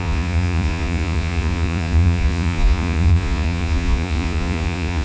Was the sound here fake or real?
fake